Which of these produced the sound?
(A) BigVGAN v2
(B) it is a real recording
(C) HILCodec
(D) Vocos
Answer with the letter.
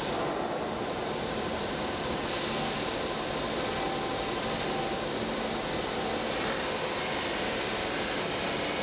B